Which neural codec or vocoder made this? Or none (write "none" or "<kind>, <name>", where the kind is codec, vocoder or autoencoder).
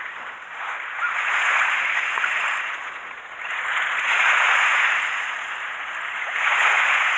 vocoder, Vocos